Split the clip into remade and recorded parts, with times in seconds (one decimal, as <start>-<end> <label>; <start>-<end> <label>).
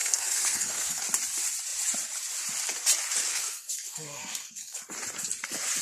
0.0-1.0 remade; 1.0-3.3 recorded; 3.3-4.8 remade; 4.8-5.8 recorded